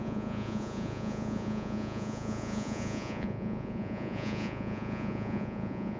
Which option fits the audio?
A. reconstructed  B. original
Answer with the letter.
A